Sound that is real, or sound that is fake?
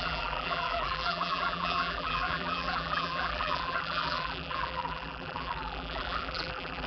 fake